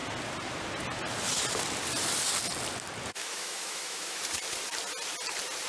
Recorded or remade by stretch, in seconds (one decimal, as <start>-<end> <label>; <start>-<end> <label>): 0.0-3.2 recorded; 3.2-4.2 remade; 4.2-5.7 recorded